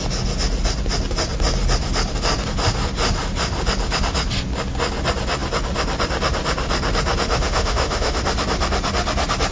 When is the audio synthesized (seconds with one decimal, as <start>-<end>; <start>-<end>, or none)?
7.3-8.2